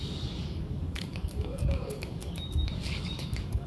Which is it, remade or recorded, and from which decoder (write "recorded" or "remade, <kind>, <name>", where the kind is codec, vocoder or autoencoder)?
remade, codec, DAC